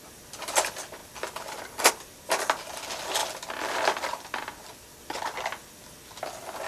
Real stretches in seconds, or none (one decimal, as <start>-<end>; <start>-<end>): 0.0-6.7